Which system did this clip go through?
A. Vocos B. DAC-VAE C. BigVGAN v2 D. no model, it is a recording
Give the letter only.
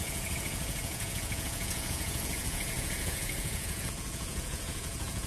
A